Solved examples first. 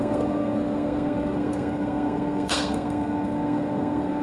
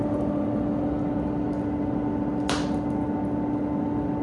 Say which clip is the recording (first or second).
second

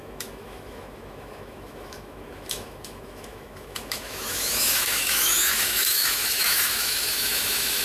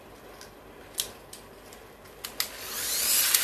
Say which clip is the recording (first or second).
second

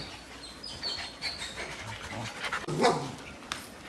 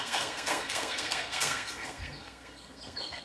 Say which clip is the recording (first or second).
first